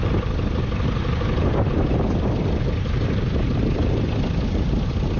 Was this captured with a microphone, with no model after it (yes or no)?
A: yes